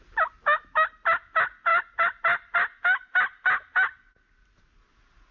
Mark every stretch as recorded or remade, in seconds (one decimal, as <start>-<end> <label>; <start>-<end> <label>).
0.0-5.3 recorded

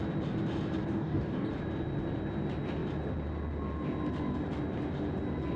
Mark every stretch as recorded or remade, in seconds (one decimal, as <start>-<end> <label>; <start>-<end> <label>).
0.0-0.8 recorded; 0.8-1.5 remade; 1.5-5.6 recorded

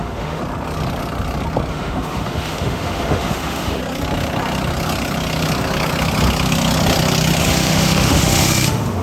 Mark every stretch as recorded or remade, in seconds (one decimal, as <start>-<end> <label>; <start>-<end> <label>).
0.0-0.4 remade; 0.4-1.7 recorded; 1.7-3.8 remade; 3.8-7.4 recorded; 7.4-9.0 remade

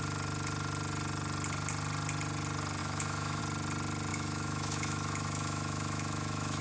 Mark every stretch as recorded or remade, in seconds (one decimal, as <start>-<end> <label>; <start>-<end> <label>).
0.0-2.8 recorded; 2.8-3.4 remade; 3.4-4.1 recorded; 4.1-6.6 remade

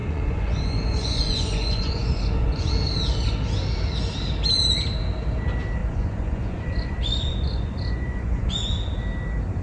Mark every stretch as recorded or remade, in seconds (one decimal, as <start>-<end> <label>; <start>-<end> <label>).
0.0-2.7 remade; 2.7-5.8 recorded; 5.8-8.9 remade; 8.9-9.6 recorded